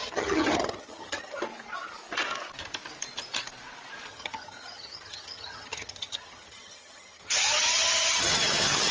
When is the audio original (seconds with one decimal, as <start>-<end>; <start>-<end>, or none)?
1.4-4.1